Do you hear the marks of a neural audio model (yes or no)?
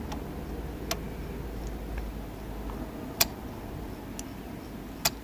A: no